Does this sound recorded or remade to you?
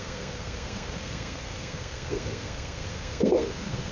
remade